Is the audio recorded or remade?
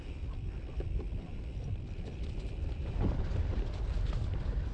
recorded